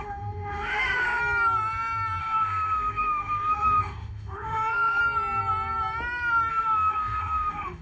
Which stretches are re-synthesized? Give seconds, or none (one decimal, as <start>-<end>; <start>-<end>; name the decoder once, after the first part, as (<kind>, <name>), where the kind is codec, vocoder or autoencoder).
0.0-1.2 (autoencoder, DAC-VAE); 2.2-5.0; 6.5-7.8